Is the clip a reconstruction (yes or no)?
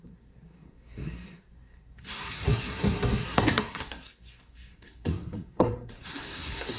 yes